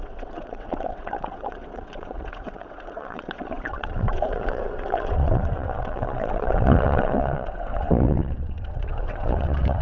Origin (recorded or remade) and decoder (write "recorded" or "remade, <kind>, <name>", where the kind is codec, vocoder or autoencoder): remade, vocoder, WaveNeXt